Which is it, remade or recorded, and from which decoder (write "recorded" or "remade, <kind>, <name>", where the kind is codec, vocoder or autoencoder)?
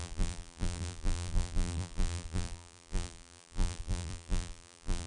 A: remade, vocoder, BigVGAN v2